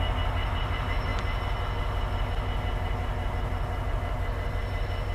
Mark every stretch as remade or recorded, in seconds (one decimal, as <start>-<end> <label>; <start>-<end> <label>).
0.0-5.1 recorded